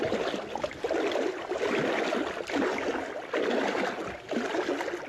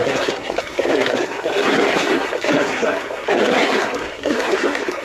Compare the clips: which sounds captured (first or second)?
first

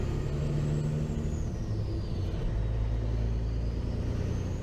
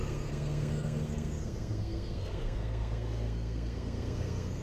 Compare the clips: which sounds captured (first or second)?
first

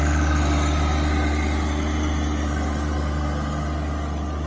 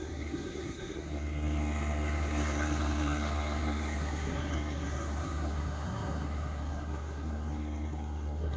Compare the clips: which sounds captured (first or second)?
first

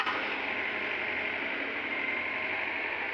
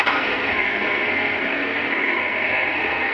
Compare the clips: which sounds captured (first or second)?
first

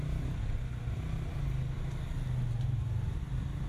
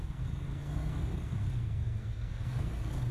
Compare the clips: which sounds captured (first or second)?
first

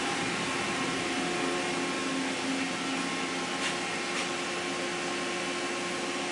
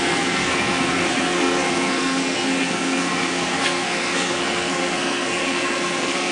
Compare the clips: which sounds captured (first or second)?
first